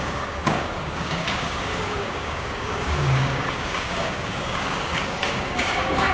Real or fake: fake